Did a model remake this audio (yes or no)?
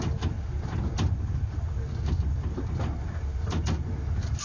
no